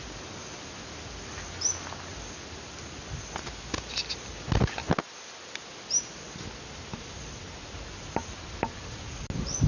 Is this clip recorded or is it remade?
recorded